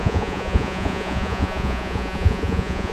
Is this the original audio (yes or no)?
no